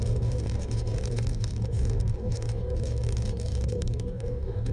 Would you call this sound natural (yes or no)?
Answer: no